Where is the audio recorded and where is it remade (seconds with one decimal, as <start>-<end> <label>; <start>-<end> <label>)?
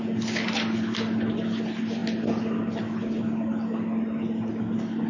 0.0-5.1 recorded